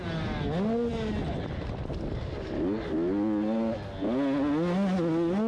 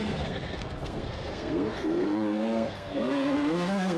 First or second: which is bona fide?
first